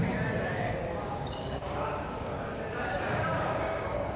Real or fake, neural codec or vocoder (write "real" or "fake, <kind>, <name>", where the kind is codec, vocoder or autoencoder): fake, codec, DAC